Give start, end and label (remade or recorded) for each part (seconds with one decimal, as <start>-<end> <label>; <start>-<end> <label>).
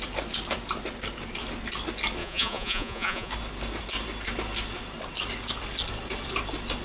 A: 0.0-2.2 recorded; 2.2-3.3 remade; 3.3-6.8 recorded